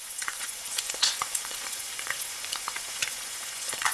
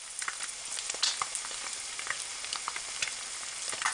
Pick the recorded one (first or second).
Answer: second